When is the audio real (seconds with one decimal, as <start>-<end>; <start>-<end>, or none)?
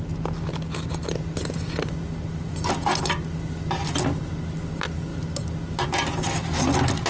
0.0-7.1